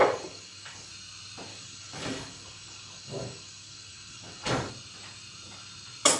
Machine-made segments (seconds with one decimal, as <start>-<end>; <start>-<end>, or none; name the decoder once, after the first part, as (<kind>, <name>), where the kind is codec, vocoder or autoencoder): 0.0-0.9 (codec, DAC); 1.5-4.7